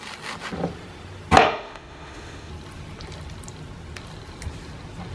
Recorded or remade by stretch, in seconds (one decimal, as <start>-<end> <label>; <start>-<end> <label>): 0.0-1.4 recorded; 1.4-2.5 remade; 2.5-5.1 recorded